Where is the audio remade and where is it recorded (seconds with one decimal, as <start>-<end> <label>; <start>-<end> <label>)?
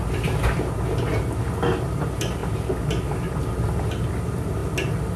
0.0-5.2 recorded